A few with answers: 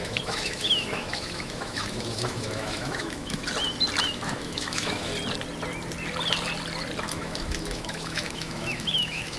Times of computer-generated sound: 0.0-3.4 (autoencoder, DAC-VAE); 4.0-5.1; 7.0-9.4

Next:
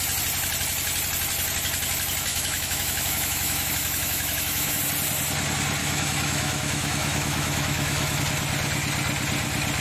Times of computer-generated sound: 2.3-4.8 (autoencoder, DAC-VAE); 5.8-8.2

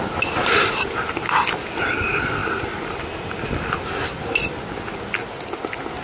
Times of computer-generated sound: none

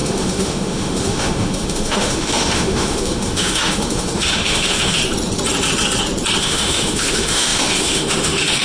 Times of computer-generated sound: 0.0-5.0 (autoencoder, DAC-VAE); 6.4-8.6